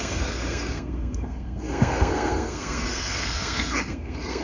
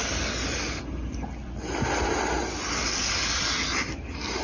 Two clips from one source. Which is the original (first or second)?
second